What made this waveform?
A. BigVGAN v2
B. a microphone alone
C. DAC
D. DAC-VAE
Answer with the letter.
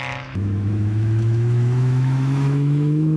D